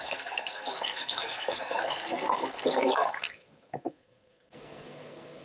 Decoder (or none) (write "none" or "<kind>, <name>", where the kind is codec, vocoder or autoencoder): codec, SNAC